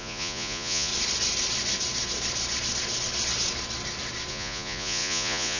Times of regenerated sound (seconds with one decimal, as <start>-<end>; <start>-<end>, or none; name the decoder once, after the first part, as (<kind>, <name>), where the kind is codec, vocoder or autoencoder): 0.0-0.9 (vocoder, Vocos); 4.3-5.6